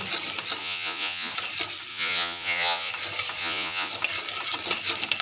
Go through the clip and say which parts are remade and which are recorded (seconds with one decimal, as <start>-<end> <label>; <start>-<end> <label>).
0.0-0.6 recorded; 0.6-1.3 remade; 1.3-1.9 recorded; 1.9-2.9 remade; 2.9-3.4 recorded; 3.4-3.9 remade; 3.9-5.2 recorded